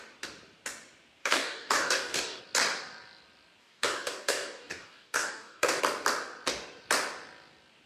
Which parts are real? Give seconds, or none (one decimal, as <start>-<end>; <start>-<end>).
0.0-1.2; 2.4-3.6; 5.8-7.9